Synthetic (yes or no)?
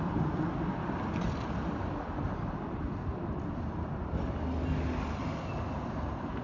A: no